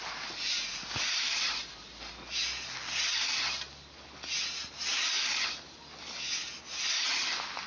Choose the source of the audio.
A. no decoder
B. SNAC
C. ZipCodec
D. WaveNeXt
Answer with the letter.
A